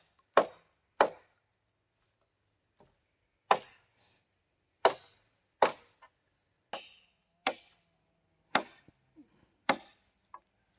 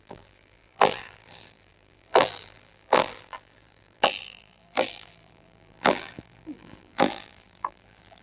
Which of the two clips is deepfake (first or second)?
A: second